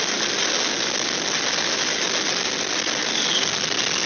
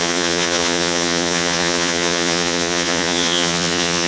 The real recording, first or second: first